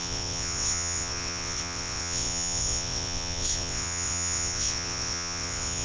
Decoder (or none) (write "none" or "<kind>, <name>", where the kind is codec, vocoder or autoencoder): vocoder, WaveNeXt